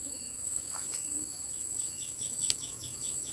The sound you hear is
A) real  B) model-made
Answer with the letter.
B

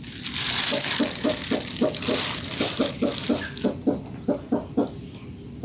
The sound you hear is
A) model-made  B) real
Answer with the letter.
B